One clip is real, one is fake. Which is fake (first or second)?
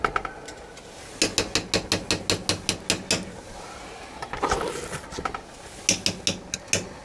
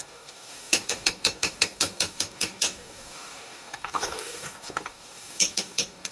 second